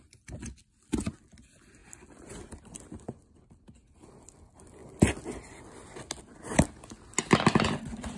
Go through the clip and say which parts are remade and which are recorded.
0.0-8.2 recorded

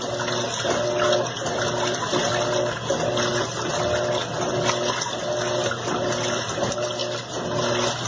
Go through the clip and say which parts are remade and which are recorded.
0.0-8.1 recorded

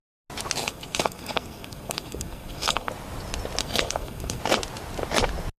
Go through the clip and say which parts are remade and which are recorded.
0.0-0.6 recorded; 0.6-2.9 remade; 2.9-3.6 recorded; 3.6-4.4 remade; 4.4-5.6 recorded

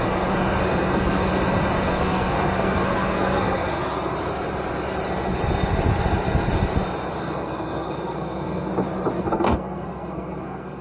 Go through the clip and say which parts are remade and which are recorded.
0.0-1.3 remade; 1.3-1.9 recorded; 1.9-3.8 remade; 3.8-7.2 recorded; 7.2-8.7 remade; 8.7-9.2 recorded; 9.2-10.8 remade

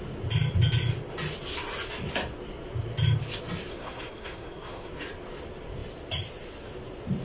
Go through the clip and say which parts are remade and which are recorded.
0.0-3.7 recorded; 3.7-4.9 remade; 4.9-7.2 recorded